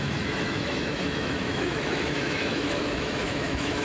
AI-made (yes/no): yes